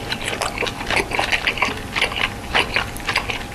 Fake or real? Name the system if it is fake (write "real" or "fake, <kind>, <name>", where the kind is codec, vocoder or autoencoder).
real